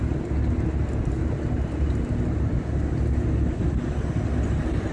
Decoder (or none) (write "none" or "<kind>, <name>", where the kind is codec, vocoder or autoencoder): none